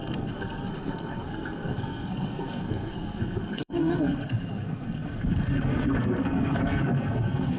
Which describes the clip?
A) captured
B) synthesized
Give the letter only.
B